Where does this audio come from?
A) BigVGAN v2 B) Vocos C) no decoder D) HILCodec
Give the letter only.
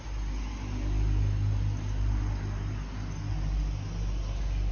C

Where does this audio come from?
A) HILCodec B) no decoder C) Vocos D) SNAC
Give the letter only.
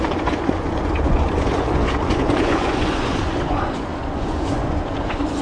C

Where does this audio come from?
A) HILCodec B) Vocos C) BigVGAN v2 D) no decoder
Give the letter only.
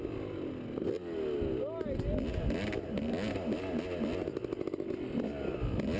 D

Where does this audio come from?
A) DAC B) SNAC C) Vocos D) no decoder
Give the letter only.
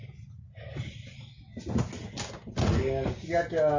D